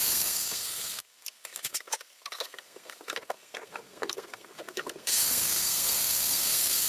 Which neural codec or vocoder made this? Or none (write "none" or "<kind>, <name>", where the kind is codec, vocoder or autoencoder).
codec, SNAC